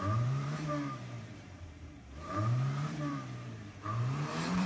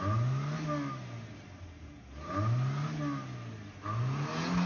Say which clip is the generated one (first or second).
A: first